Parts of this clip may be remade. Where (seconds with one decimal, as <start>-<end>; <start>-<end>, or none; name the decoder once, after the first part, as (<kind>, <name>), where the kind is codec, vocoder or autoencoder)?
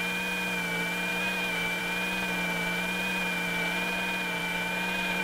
1.1-1.8 (autoencoder, DAC-VAE); 4.4-5.2